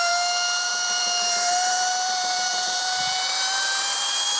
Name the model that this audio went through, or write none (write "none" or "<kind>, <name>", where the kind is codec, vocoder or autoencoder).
vocoder, BigVGAN v2